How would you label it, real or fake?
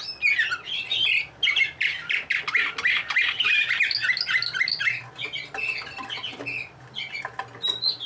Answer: real